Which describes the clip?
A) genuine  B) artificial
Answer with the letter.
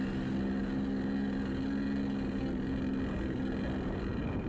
A